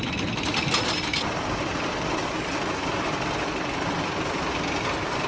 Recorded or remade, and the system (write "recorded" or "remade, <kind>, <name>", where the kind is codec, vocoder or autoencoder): recorded